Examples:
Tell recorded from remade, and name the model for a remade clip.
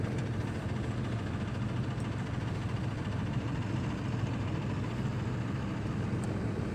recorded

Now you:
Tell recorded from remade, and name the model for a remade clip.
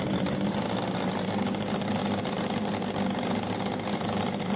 recorded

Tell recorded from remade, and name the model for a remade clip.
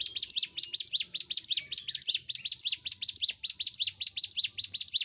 recorded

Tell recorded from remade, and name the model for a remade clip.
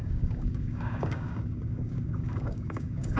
remade, codec, DAC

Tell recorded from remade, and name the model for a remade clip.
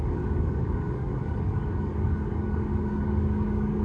remade, codec, DAC